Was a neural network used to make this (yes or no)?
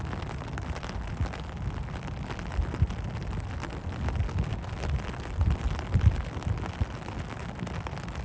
no